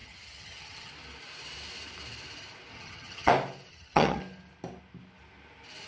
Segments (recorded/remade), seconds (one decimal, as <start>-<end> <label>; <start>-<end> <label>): 0.0-0.9 remade; 0.9-2.7 recorded; 2.7-3.3 remade; 3.3-3.7 recorded; 3.7-4.2 remade; 4.2-5.9 recorded